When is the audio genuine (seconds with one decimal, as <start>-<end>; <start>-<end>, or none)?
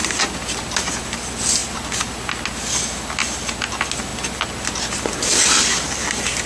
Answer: 0.0-6.5